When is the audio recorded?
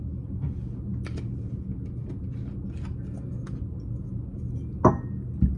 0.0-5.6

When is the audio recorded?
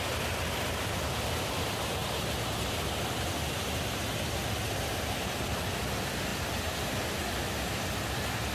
0.0-8.5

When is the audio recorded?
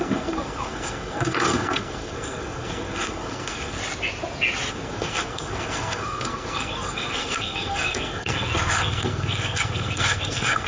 3.8-4.7